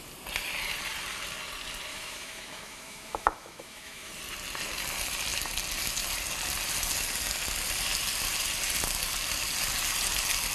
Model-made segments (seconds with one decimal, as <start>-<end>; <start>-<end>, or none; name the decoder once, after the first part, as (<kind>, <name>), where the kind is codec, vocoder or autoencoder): 1.9-4.1 (autoencoder, DAC-VAE)